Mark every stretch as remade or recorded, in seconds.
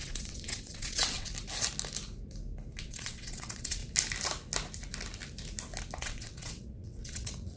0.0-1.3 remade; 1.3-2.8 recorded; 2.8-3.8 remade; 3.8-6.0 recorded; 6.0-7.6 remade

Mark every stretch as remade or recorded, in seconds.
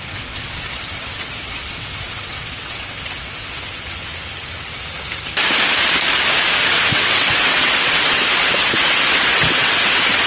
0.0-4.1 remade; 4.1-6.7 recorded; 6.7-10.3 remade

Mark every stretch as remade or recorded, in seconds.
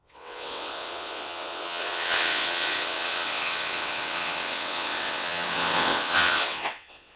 0.0-7.2 remade